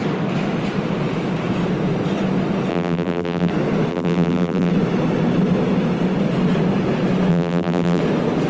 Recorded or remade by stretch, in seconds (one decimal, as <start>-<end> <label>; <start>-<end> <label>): 0.0-2.7 recorded; 2.7-3.5 remade; 3.5-3.9 recorded; 3.9-4.7 remade; 4.7-7.3 recorded; 7.3-8.0 remade; 8.0-8.5 recorded